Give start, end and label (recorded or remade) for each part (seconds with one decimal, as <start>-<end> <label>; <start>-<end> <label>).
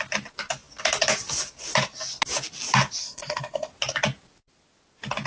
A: 0.0-3.0 recorded; 3.0-3.7 remade; 3.7-5.3 recorded